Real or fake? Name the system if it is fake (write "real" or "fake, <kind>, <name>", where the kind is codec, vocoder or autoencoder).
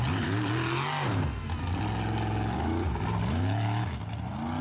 real